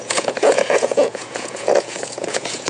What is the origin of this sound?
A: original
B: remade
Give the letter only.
B